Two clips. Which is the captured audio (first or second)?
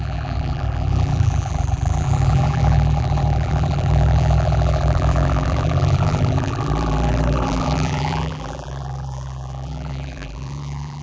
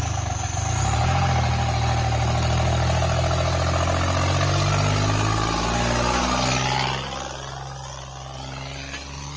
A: second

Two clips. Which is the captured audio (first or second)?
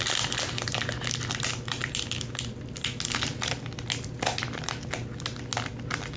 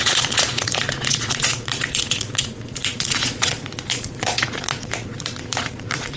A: first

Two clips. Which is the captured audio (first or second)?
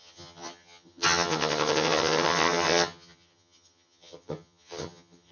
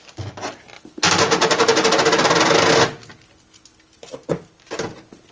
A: second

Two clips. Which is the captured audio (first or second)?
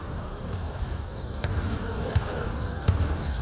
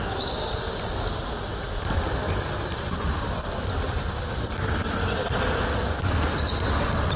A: second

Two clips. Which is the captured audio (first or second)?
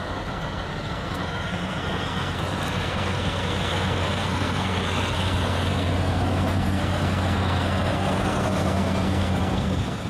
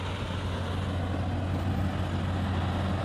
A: second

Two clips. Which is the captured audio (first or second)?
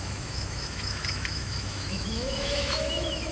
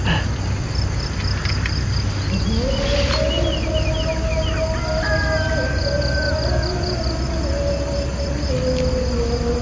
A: second